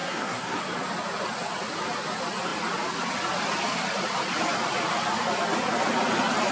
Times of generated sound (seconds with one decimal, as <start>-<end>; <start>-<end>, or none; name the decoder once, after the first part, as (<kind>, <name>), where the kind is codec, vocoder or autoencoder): 0.0-0.6 (codec, SNAC)